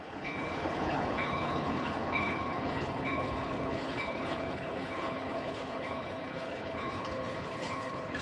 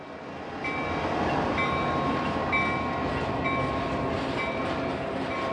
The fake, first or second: first